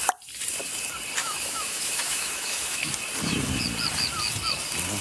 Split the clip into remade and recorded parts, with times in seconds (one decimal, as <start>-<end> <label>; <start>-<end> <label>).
0.0-1.2 recorded; 1.2-2.9 remade; 2.9-5.0 recorded